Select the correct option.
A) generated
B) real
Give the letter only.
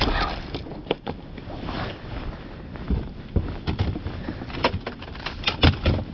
B